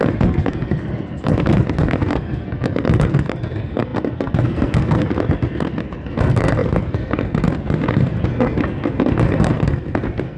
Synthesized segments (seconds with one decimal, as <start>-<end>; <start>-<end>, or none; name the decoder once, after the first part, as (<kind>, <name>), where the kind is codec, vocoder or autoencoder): 0.0-10.4 (codec, SNAC)